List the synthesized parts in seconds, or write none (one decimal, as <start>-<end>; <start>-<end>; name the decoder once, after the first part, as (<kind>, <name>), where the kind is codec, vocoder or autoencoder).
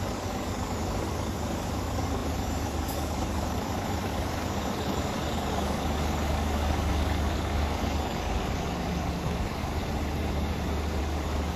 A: 0.0-9.8 (codec, DAC); 11.0-11.6